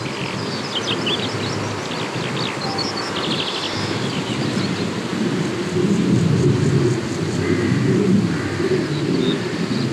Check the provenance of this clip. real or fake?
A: real